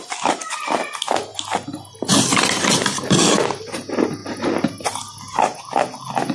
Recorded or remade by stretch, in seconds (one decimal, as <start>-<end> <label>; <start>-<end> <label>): 0.0-0.4 recorded; 0.4-0.9 remade; 0.9-4.2 recorded; 4.2-5.4 remade; 5.4-6.3 recorded